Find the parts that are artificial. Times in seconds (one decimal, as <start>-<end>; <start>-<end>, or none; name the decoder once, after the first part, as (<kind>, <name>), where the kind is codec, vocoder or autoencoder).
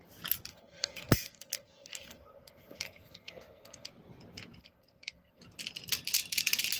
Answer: 0.5-3.9 (codec, SNAC); 4.6-5.4